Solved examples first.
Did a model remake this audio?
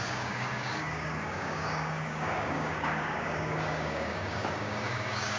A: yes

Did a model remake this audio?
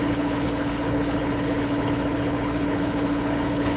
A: yes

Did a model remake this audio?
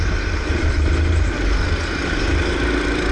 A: no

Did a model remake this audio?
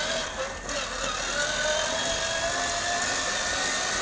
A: no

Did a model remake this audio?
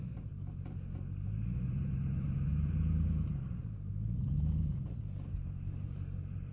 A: yes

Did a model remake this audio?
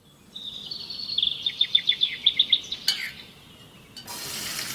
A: no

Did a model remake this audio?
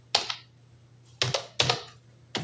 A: no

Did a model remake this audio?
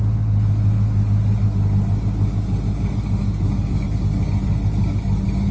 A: no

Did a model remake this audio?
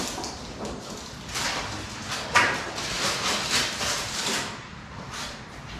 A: no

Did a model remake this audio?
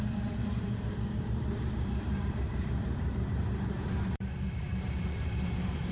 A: yes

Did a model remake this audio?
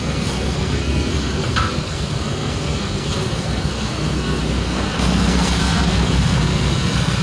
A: yes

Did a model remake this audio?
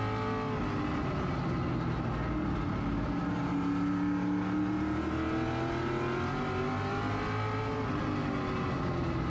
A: no